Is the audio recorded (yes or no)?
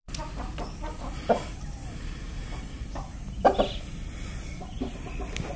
no